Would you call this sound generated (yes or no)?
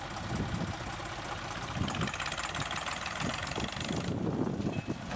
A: no